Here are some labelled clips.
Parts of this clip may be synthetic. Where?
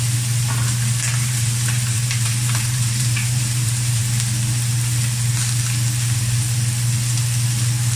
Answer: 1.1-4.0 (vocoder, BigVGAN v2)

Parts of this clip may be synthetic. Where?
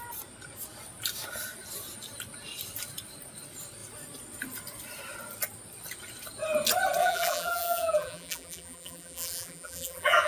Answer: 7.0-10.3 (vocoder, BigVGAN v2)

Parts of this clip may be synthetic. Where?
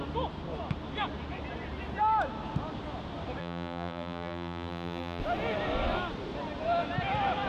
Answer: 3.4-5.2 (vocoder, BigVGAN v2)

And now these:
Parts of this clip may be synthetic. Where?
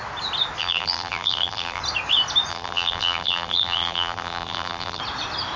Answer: 0.6-1.8 (vocoder, BigVGAN v2); 2.5-5.0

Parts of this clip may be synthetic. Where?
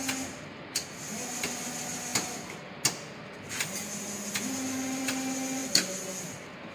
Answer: none